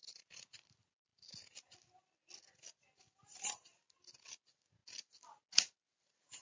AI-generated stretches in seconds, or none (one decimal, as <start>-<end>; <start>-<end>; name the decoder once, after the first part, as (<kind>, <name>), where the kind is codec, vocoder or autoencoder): none